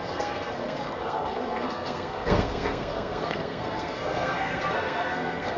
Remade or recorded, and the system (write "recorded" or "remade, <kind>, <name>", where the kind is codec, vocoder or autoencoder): remade, codec, SNAC